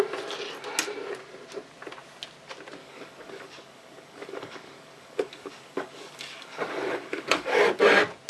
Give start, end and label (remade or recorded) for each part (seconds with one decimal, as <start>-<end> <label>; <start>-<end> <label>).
0.0-2.8 recorded; 2.8-7.7 remade; 7.7-8.3 recorded